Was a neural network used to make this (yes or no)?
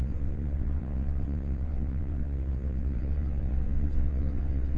yes